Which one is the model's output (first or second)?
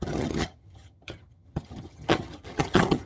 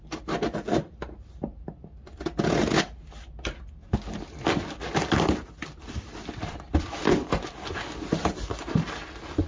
first